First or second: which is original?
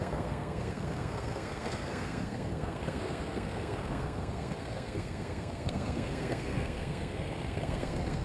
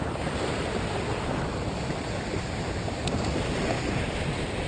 second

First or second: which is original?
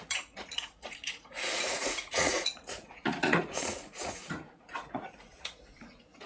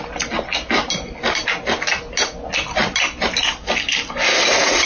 second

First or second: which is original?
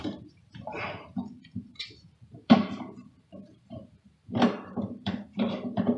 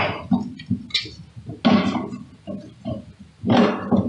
second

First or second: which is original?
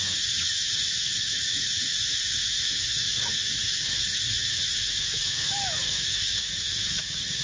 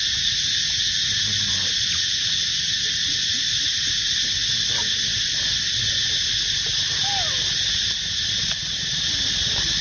second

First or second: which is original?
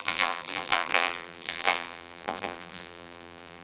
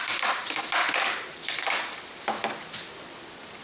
second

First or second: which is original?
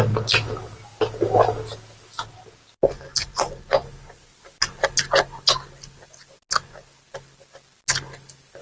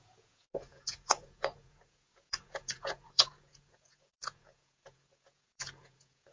first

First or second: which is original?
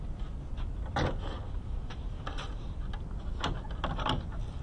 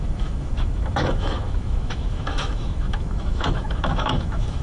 first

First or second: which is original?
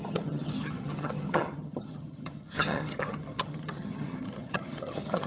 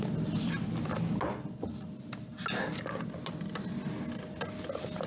second